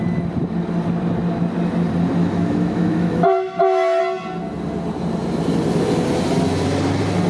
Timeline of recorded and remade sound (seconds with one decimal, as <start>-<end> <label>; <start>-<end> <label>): 0.0-2.2 recorded; 2.2-4.0 remade; 4.0-7.3 recorded